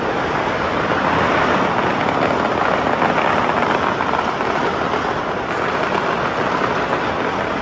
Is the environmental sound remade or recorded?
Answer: recorded